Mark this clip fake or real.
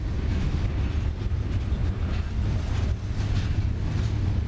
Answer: real